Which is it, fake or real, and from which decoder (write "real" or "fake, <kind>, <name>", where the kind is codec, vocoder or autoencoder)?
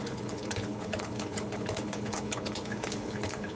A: fake, codec, HILCodec